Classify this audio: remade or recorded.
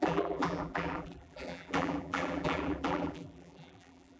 remade